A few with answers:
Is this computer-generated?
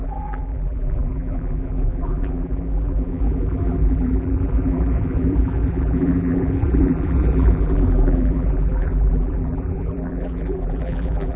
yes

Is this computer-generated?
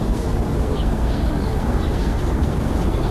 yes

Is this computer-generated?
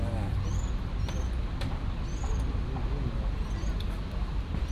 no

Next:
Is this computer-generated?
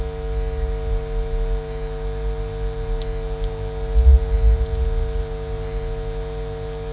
no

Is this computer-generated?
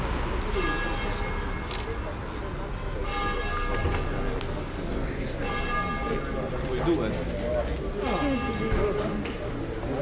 no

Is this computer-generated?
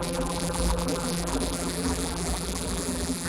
yes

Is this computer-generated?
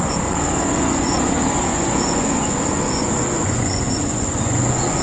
yes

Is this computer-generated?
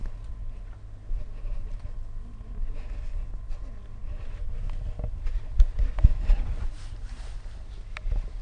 no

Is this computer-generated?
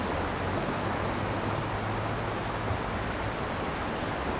no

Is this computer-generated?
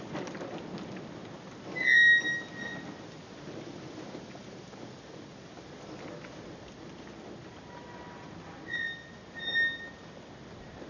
no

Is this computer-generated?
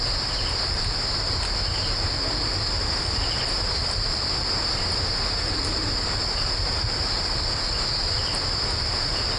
no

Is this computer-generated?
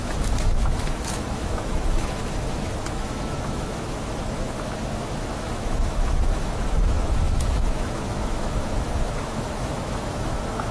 yes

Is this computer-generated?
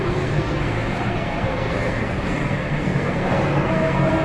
yes